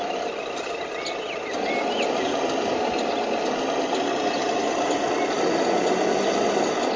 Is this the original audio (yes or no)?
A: yes